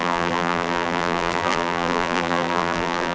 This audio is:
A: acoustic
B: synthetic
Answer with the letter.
B